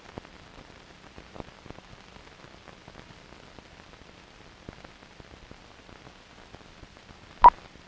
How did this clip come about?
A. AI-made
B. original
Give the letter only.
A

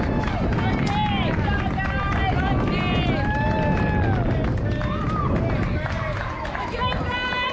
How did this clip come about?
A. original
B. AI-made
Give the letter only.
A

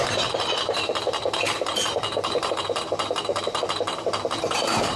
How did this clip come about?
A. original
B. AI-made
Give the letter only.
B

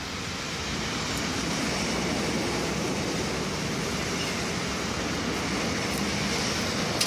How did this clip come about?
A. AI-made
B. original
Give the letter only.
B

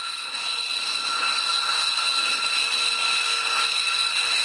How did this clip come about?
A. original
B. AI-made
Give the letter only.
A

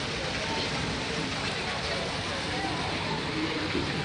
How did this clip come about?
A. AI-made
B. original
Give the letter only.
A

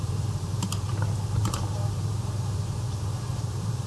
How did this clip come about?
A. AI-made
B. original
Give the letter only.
A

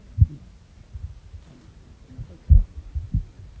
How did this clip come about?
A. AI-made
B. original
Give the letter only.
B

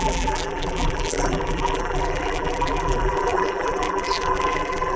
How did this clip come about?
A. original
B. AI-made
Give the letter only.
B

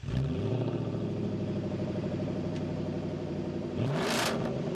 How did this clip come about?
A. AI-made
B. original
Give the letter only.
A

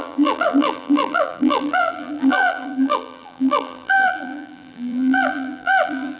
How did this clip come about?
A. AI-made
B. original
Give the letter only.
A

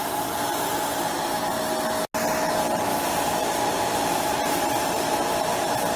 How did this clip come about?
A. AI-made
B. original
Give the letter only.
B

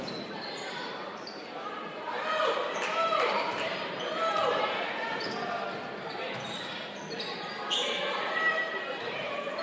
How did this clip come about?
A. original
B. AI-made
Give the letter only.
B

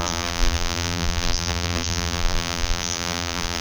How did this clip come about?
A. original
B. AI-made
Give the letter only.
B